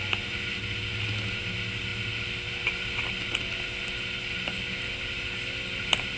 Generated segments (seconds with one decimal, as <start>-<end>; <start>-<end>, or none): none